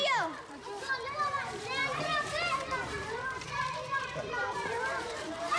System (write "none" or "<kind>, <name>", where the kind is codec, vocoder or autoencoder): vocoder, BigVGAN v2